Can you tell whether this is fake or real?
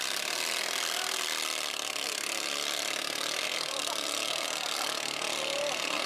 real